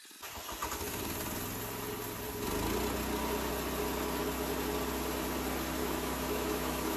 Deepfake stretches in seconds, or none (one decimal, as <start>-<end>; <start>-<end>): 5.8-7.0